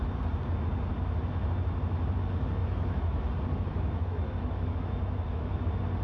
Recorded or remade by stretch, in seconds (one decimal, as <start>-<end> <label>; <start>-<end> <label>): 0.0-2.6 recorded; 2.6-3.3 remade; 3.3-3.7 recorded; 3.7-5.6 remade; 5.6-6.0 recorded